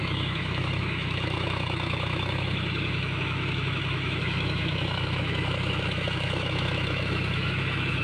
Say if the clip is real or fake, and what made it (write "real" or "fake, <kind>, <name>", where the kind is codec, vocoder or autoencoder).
fake, autoencoder, DAC-VAE